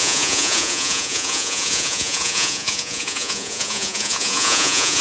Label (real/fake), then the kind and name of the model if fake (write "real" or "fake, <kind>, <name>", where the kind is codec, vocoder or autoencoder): fake, vocoder, Vocos